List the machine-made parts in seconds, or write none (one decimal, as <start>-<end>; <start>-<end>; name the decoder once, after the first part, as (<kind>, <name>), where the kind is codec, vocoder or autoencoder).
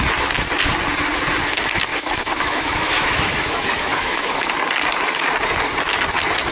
1.9-4.5 (autoencoder, DAC-VAE)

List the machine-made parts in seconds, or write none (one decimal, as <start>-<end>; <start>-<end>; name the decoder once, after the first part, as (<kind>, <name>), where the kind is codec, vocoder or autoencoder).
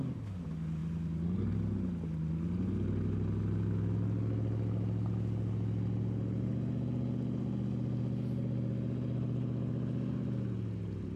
none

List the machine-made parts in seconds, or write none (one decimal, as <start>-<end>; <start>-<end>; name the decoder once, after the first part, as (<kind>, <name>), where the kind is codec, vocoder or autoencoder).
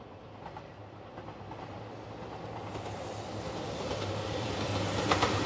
0.0-0.8 (vocoder, BigVGAN v2); 4.1-4.7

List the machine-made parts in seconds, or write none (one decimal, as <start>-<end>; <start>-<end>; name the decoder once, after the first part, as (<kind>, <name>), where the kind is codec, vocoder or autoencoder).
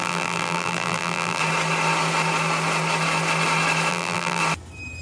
0.0-1.4 (vocoder, BigVGAN v2); 3.9-4.4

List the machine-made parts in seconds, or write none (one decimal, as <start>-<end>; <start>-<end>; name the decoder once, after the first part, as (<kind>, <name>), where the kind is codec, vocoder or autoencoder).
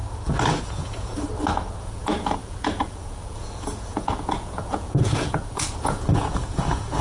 0.6-1.1 (vocoder, Vocos); 1.8-7.0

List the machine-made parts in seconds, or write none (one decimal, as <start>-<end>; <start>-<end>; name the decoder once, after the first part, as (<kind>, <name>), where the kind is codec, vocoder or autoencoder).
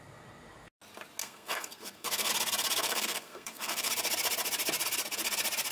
1.2-2.3 (codec, SNAC); 2.8-3.9